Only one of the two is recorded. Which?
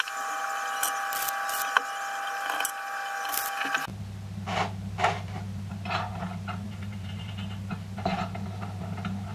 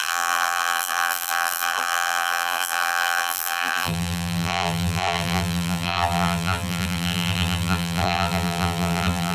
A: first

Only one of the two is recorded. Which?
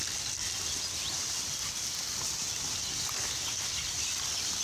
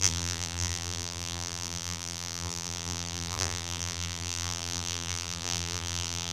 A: first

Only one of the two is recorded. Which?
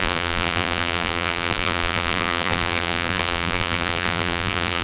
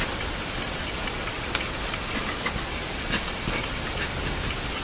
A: second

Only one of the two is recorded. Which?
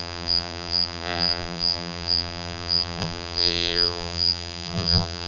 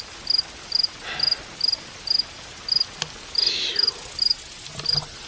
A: second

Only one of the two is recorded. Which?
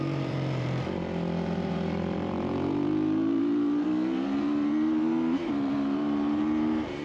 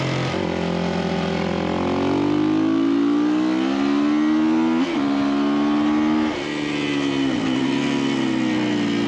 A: second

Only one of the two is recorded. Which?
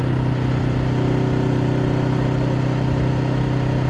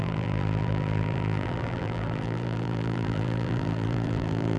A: first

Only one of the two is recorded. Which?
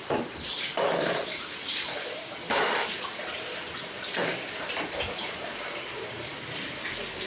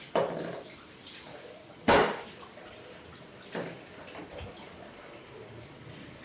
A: second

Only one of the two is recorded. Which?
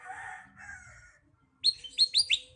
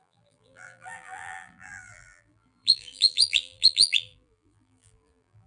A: first